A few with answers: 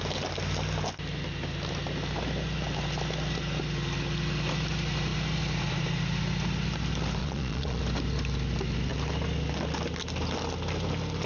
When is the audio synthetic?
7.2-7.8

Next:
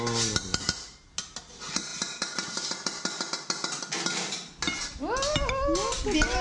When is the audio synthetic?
none

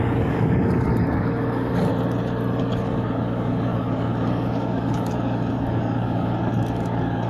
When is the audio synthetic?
0.0-1.9; 2.6-7.3

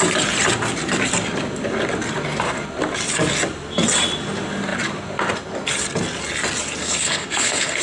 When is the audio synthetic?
6.8-7.8

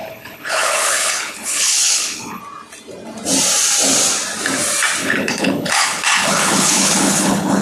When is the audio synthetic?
0.0-2.4; 5.0-7.6